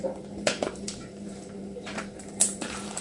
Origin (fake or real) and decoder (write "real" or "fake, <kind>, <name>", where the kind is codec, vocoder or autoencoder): fake, vocoder, BigVGAN v2